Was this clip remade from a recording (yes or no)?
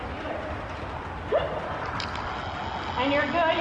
no